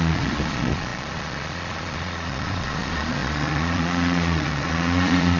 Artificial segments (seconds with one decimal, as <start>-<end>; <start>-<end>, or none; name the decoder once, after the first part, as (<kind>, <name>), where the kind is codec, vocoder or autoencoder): 0.0-5.4 (vocoder, Vocos)